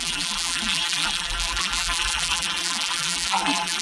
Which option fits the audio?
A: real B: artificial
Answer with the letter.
B